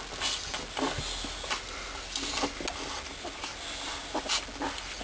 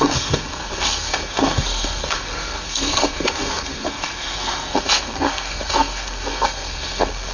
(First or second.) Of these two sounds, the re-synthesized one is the second